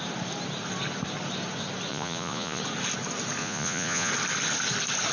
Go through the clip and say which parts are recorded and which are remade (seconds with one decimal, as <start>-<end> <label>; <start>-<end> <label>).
0.0-1.9 recorded; 1.9-2.6 remade; 2.6-3.4 recorded; 3.4-4.1 remade; 4.1-5.1 recorded